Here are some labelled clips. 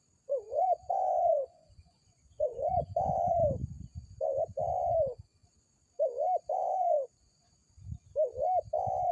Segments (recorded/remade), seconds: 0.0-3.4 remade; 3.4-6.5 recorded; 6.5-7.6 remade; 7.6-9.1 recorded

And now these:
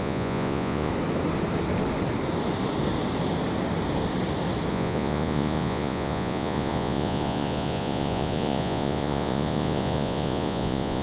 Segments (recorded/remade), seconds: 0.0-0.9 remade; 0.9-4.7 recorded; 4.7-11.0 remade